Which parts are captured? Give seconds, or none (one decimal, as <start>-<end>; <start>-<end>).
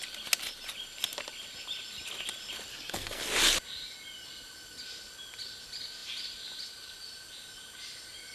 0.0-2.7; 3.2-8.3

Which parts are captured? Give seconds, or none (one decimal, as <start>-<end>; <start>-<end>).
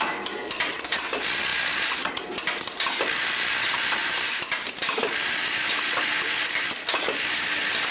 0.0-7.9